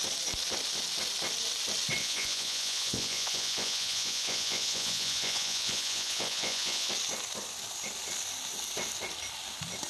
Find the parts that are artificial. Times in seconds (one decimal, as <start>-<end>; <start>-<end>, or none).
2.0-6.9